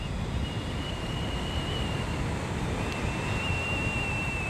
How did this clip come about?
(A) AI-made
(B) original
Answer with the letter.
B